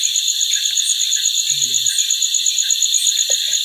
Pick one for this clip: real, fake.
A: real